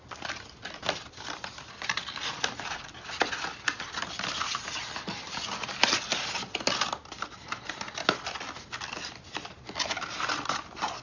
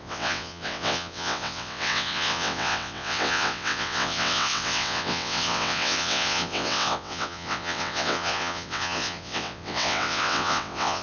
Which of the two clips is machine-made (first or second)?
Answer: second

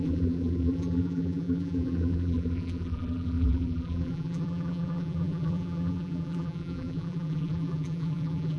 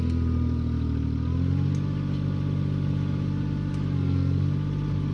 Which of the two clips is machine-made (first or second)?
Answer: first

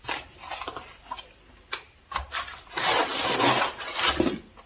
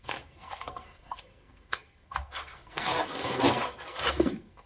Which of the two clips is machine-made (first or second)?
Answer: second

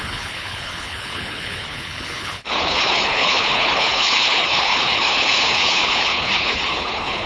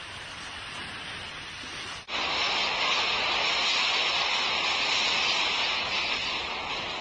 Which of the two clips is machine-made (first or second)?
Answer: first